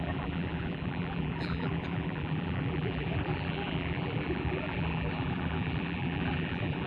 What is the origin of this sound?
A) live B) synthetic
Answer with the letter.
B